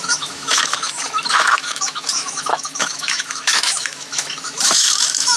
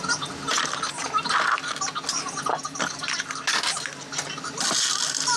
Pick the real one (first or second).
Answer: second